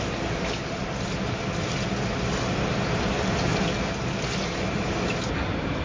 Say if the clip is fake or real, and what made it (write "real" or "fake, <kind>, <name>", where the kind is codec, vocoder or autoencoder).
real